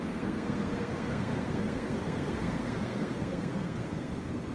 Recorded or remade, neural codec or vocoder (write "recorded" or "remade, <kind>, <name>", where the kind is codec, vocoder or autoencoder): remade, codec, SNAC